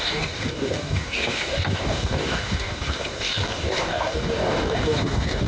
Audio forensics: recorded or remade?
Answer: remade